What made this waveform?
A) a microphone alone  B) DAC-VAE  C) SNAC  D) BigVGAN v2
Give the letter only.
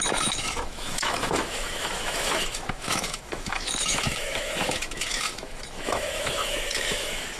B